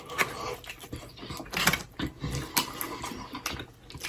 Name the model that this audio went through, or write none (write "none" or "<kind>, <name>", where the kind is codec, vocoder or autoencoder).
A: none